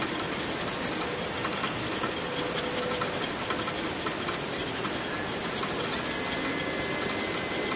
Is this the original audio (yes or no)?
yes